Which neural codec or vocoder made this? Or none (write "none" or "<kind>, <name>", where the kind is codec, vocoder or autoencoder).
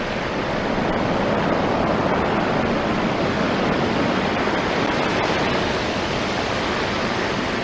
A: none